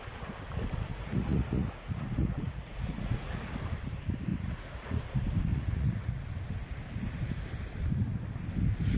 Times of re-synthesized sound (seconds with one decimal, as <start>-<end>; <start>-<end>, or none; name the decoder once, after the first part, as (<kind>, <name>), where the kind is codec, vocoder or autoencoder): 0.9-3.5 (vocoder, Vocos); 4.3-5.0; 5.5-6.2